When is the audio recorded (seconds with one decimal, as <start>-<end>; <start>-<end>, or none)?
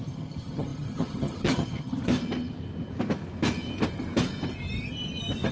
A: 2.1-5.5